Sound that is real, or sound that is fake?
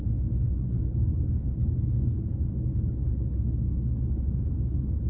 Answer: fake